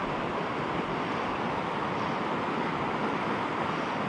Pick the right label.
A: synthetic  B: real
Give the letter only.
B